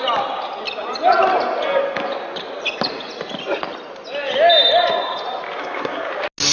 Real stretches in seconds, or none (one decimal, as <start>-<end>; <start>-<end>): 0.0-5.6; 6.1-6.5